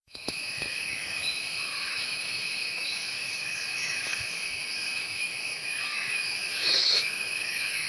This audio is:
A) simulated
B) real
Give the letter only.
A